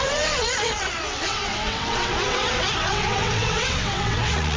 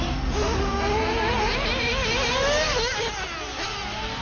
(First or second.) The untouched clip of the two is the second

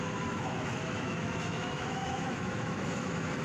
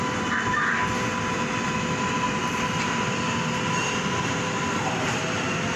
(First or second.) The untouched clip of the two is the second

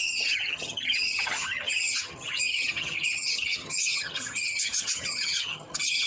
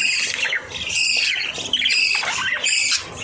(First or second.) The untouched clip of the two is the second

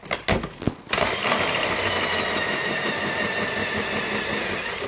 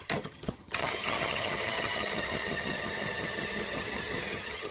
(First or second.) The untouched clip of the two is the first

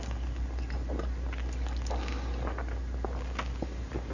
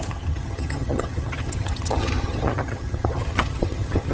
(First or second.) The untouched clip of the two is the first